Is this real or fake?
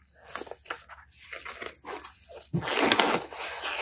real